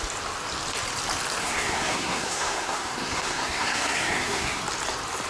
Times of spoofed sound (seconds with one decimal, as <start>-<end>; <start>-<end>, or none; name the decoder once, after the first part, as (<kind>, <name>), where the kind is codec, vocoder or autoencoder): 1.4-4.6 (codec, SNAC)